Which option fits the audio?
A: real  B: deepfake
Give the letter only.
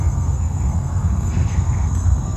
B